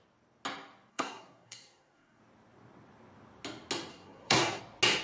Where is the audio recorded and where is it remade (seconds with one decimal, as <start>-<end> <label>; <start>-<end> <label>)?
0.0-0.9 recorded; 0.9-2.2 remade; 2.2-3.9 recorded; 3.9-4.6 remade; 4.6-5.0 recorded